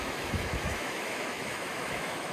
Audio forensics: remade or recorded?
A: remade